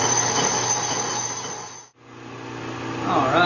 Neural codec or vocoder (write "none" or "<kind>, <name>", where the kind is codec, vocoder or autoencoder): none